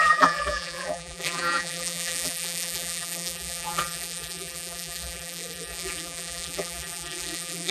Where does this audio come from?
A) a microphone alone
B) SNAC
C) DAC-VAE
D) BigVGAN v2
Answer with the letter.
D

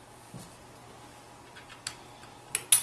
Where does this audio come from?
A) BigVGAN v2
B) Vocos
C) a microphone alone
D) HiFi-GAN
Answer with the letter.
C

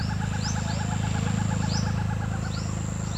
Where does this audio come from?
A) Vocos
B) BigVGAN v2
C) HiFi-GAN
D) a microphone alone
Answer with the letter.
D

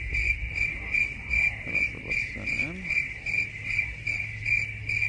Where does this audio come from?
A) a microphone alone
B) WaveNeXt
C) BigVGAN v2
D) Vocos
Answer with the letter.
A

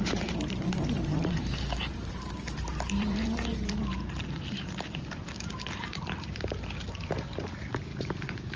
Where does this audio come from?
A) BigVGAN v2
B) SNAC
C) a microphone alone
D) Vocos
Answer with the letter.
A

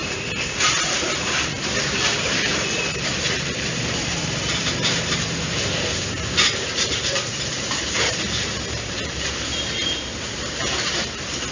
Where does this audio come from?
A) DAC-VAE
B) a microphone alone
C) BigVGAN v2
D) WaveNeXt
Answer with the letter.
C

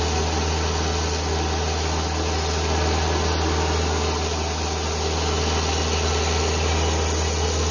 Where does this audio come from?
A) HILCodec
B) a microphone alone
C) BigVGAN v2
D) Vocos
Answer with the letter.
B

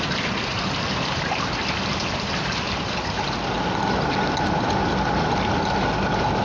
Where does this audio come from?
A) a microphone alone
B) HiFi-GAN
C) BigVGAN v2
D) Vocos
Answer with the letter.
A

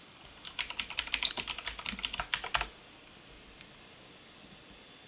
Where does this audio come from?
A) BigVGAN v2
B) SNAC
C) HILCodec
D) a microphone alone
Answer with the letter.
D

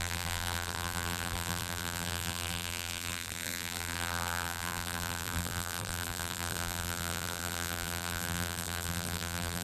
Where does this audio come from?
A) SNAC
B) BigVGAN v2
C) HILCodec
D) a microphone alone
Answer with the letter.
B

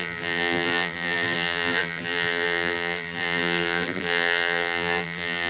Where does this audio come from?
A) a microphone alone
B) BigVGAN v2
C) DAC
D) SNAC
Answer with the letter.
B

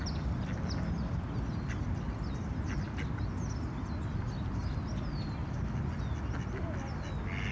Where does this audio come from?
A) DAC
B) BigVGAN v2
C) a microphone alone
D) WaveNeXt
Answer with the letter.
C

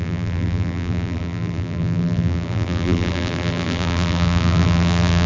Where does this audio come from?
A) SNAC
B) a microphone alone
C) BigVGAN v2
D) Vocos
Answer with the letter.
C